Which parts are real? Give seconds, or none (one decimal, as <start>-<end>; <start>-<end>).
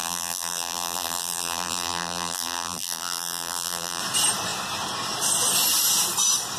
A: 4.0-6.6